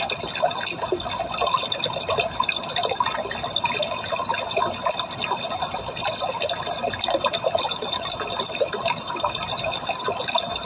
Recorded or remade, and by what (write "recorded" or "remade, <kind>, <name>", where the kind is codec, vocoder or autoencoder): recorded